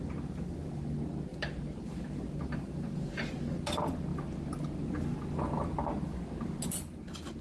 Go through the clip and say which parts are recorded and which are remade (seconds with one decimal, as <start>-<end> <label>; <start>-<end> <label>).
0.0-7.4 recorded